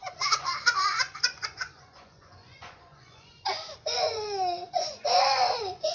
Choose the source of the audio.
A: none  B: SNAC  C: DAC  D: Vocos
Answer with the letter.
D